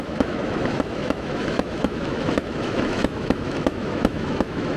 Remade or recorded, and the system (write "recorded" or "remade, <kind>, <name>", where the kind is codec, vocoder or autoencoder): remade, autoencoder, DAC-VAE